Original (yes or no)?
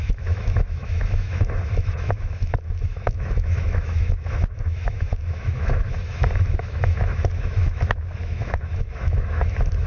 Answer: no